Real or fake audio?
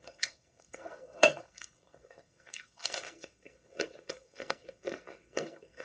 fake